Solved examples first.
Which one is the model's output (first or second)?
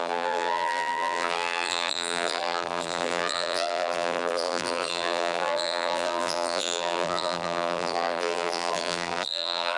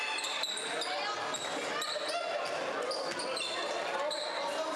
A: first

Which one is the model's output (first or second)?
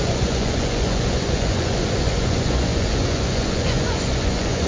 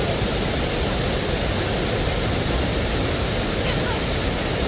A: first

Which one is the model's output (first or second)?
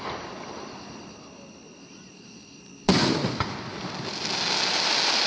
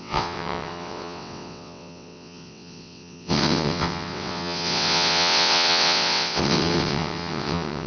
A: second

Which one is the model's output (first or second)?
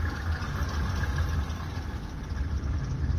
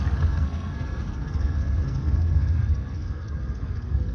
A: second